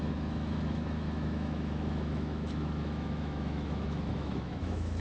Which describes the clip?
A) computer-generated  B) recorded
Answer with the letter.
A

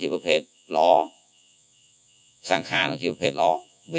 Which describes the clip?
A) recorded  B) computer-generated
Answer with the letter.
B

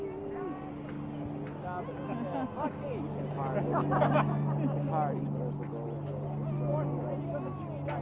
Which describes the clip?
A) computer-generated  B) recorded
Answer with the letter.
B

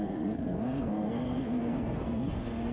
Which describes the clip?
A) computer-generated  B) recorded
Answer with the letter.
A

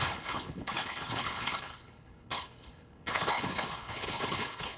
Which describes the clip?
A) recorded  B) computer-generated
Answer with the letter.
B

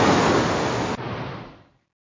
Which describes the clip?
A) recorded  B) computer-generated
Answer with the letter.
A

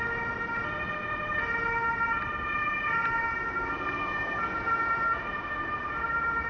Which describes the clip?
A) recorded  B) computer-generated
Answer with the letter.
A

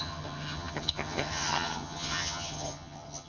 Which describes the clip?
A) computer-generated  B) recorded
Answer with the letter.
A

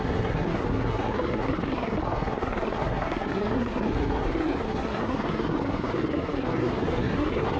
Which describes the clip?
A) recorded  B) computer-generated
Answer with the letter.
B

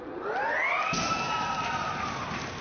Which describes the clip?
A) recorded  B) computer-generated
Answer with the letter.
A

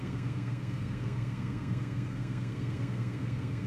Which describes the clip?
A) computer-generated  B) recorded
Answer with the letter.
A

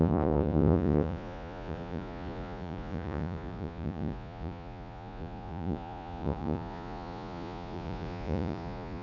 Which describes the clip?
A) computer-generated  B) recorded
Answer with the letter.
A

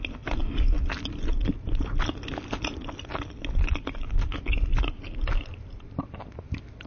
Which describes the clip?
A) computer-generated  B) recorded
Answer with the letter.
B